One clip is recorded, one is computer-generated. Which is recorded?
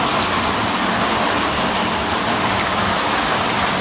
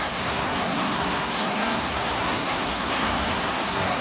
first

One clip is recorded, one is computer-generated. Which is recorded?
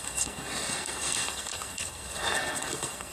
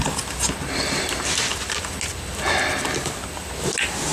second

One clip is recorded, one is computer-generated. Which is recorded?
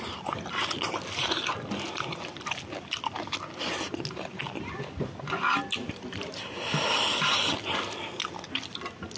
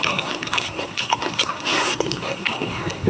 first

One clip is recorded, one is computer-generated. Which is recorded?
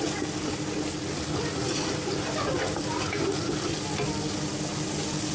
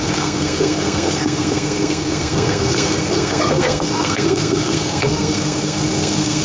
first